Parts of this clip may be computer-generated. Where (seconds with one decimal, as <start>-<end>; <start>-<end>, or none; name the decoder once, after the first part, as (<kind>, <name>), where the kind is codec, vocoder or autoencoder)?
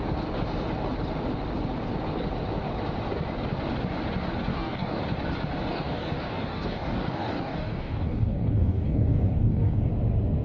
4.5-5.0 (codec, DAC); 5.7-9.9